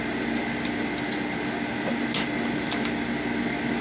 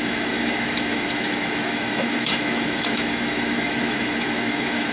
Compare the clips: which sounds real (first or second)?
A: first